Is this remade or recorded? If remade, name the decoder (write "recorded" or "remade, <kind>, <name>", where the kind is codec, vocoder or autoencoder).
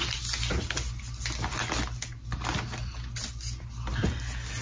recorded